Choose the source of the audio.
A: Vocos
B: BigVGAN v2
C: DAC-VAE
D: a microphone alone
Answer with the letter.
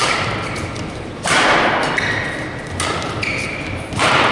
D